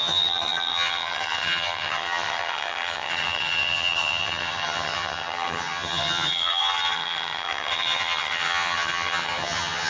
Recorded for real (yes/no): no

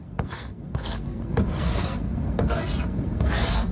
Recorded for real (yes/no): no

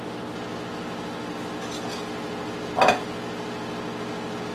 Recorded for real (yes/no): yes